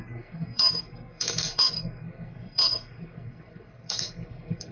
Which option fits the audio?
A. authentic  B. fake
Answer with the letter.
B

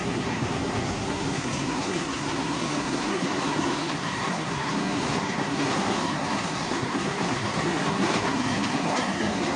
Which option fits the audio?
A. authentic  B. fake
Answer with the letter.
B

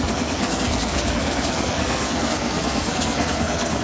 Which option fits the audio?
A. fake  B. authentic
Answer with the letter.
A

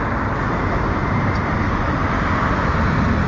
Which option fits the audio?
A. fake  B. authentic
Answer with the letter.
B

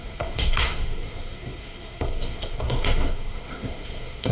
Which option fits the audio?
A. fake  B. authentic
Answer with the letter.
A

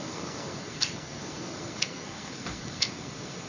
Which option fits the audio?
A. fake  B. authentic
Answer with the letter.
A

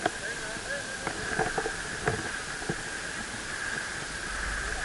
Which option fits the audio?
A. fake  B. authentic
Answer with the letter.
B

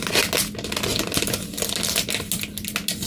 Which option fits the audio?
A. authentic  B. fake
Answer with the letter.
A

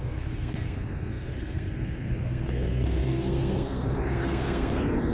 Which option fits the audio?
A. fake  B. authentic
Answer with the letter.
A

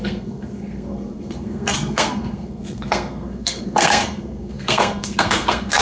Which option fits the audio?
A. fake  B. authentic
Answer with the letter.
A